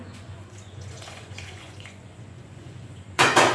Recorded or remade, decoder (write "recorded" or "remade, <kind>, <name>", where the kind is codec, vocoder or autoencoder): remade, vocoder, Vocos